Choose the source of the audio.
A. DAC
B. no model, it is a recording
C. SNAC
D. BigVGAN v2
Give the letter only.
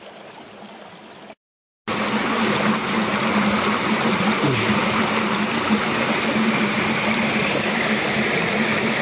B